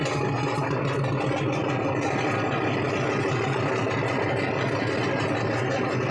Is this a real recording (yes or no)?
yes